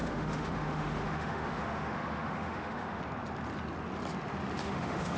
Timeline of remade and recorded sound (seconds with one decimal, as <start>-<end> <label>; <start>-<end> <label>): 0.0-3.0 remade; 3.0-4.6 recorded; 4.6-5.2 remade